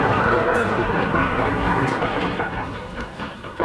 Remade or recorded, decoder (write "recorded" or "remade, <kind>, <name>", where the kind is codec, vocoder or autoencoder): remade, codec, SNAC